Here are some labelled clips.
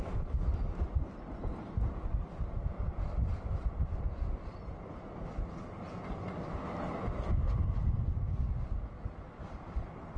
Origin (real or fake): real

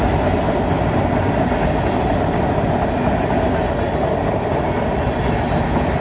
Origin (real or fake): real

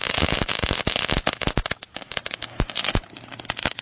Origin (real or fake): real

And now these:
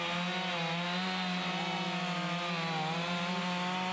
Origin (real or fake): real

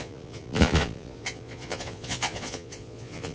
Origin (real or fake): fake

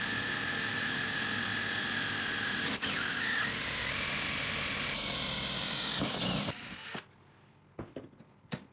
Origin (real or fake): real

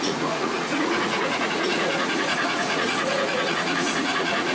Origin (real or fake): fake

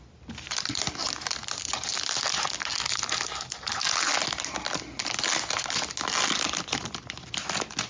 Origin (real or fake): real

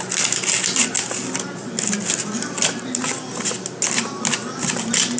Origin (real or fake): real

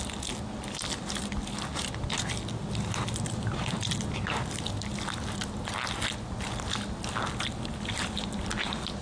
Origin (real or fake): real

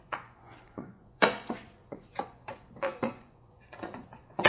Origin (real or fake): fake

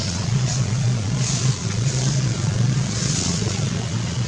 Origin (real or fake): fake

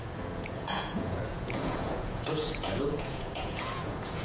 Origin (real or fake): fake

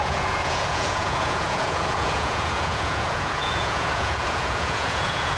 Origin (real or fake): fake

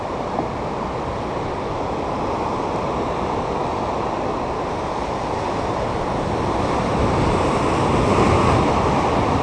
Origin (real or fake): real